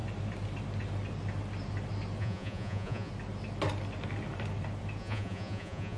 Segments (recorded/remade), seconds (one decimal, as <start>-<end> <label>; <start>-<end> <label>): 0.0-2.2 recorded; 2.2-3.1 remade; 3.1-5.0 recorded; 5.0-6.0 remade